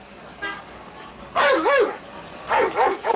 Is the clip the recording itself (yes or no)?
no